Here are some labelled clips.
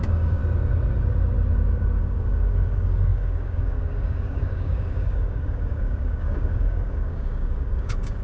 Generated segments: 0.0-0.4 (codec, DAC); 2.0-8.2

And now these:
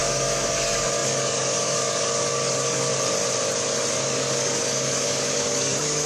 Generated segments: 0.0-2.9 (codec, DAC); 3.9-6.1

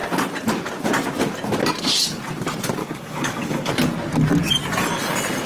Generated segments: 2.8-3.7 (codec, DAC)

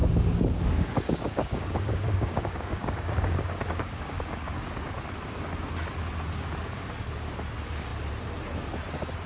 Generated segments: 0.0-4.5 (codec, DAC)

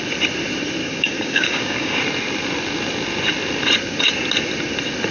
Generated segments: 0.8-2.0 (codec, DAC)

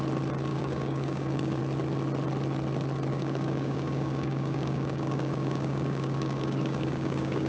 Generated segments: 0.5-1.6 (codec, DAC); 3.1-7.5

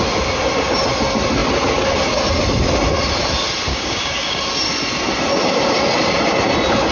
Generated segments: 3.7-4.4 (codec, DAC)